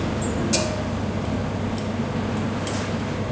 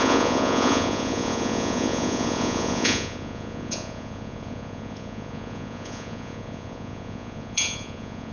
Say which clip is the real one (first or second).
first